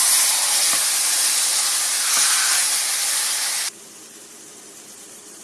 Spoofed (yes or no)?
no